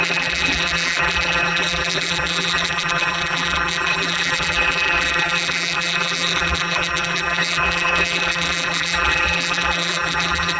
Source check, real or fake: fake